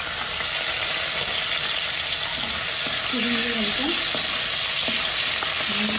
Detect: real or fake real